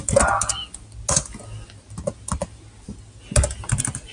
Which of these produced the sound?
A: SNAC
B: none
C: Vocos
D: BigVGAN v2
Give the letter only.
B